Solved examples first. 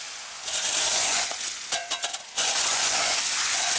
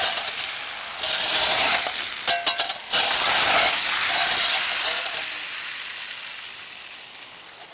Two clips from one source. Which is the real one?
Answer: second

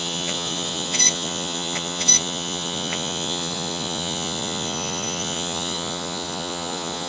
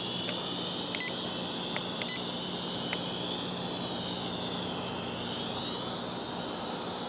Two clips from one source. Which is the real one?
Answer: second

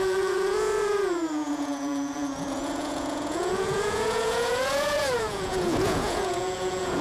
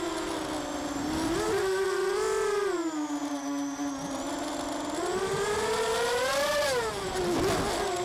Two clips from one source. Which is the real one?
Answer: second